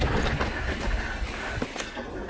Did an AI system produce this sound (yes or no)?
no